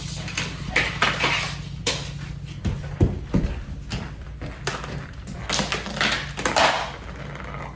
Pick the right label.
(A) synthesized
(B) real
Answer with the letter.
B